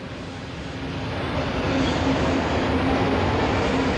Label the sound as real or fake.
real